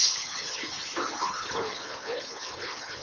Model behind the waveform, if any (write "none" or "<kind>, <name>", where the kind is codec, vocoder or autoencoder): codec, HILCodec